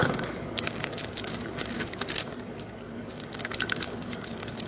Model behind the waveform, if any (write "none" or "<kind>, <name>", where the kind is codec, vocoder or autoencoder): codec, DAC